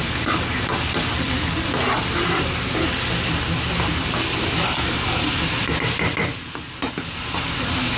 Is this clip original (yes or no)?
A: yes